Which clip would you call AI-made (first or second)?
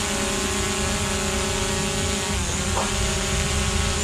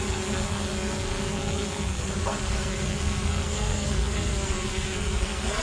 second